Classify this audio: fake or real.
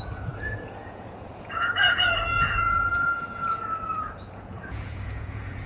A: fake